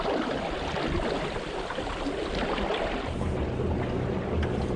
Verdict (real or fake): real